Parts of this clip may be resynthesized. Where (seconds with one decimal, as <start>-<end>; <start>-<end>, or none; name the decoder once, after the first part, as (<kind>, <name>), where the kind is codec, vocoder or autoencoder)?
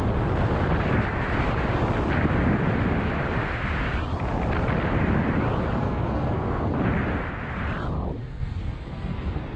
5.8-6.7 (codec, SNAC); 8.2-9.6